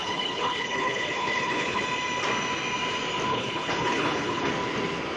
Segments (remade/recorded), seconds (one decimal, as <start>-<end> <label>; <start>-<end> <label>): 0.0-1.8 remade; 1.8-3.3 recorded; 3.3-4.5 remade; 4.5-5.2 recorded